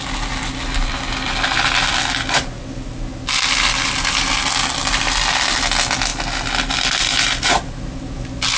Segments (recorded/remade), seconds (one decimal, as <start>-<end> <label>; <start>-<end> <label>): 0.0-8.6 recorded